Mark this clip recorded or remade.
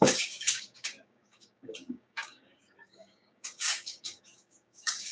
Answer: remade